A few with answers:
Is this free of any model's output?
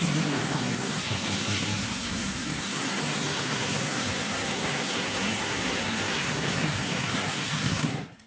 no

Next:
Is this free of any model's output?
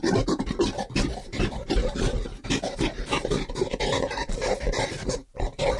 yes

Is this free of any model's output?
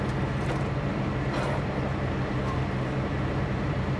no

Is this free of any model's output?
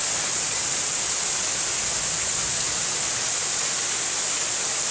yes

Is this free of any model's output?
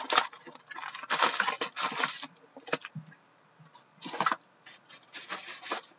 yes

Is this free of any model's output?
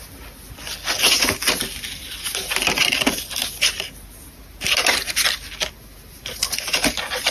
yes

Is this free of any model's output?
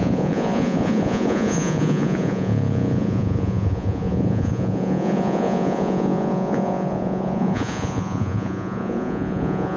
no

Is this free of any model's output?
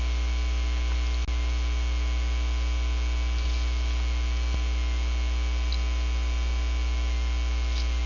yes